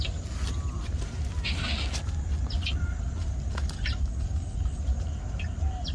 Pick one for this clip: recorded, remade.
recorded